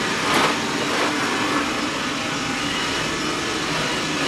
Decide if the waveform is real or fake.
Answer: real